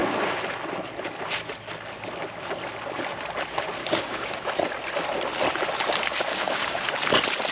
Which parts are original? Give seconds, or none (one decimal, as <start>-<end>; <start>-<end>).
0.0-3.8; 4.5-6.3; 6.9-7.5